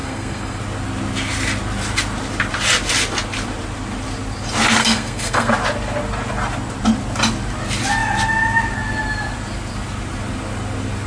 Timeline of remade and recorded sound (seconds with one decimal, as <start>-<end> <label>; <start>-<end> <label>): 0.0-0.6 remade; 0.6-4.8 recorded; 4.8-5.5 remade; 5.5-11.1 recorded